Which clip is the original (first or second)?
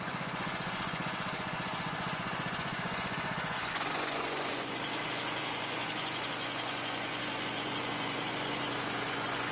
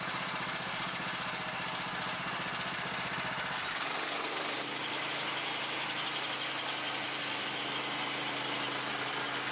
second